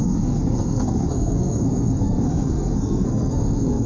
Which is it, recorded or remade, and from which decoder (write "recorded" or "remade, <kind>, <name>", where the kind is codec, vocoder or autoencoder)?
remade, codec, SNAC